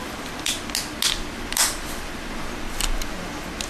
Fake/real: real